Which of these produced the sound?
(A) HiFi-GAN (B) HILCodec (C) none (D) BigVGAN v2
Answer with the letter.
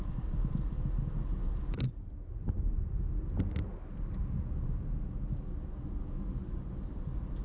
C